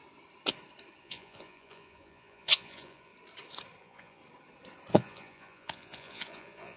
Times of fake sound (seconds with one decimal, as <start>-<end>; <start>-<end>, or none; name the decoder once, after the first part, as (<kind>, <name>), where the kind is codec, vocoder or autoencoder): 1.0-3.1 (vocoder, Vocos); 3.8-4.2; 4.9-6.8